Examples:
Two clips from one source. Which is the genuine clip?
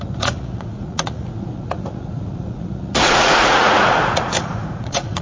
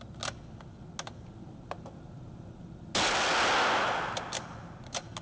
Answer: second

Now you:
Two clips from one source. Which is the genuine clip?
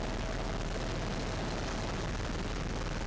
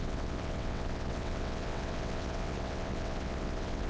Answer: first